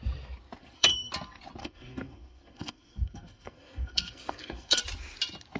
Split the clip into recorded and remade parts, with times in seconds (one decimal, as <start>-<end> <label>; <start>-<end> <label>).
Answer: 0.0-0.6 recorded; 0.6-1.1 remade; 1.1-1.6 recorded; 1.6-4.8 remade; 4.8-5.6 recorded